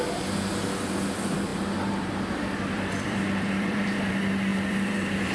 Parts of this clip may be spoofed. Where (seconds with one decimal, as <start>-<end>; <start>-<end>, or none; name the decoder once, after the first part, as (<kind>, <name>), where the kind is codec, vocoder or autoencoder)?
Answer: 1.5-4.1 (vocoder, BigVGAN v2); 4.5-5.3